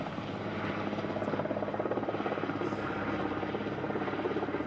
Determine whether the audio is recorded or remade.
remade